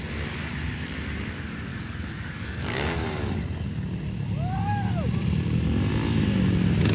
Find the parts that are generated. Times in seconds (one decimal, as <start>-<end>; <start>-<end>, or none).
1.7-3.3